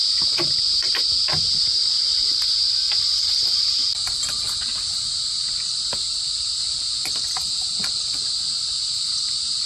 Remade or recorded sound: remade